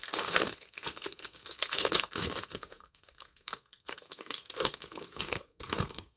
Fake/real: fake